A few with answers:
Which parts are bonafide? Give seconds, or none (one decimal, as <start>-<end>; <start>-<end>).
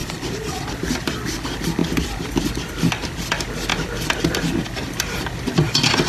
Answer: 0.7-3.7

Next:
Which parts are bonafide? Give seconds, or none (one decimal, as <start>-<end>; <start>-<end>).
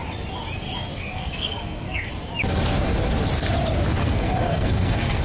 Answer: 0.0-1.0; 2.1-4.0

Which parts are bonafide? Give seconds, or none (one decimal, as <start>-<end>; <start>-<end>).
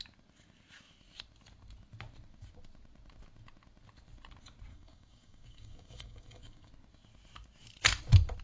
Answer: 0.0-4.7; 6.7-8.4